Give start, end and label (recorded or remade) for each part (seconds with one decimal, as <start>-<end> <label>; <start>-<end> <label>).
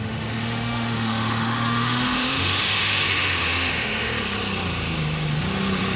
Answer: 0.0-4.1 remade; 4.1-6.0 recorded